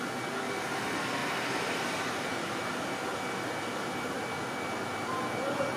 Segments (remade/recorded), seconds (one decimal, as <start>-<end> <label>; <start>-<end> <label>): 0.0-1.2 recorded; 1.2-2.7 remade; 2.7-5.8 recorded